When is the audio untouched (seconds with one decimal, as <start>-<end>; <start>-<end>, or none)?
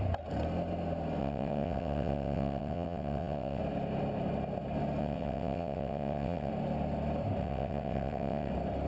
0.0-1.2; 3.6-5.0; 6.5-7.4; 8.5-8.9